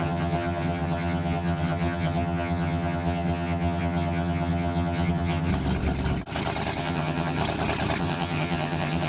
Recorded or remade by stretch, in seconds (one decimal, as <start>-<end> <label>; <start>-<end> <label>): 0.0-5.5 remade; 5.5-6.8 recorded; 6.8-7.4 remade; 7.4-8.0 recorded; 8.0-9.1 remade